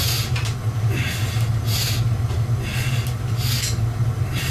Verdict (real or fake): real